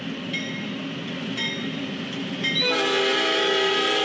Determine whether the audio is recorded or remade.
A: recorded